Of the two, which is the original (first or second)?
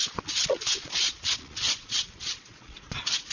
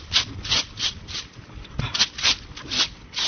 second